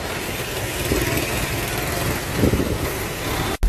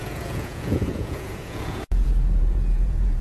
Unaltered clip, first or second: first